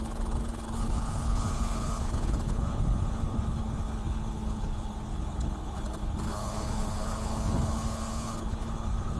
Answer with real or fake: fake